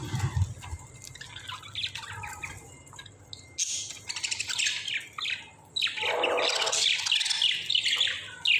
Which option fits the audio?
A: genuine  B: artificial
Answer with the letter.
A